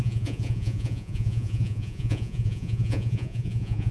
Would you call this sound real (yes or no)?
no